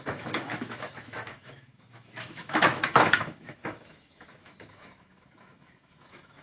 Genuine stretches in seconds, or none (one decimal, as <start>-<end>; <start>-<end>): none